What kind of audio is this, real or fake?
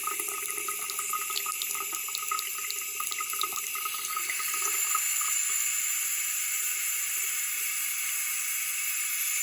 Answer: real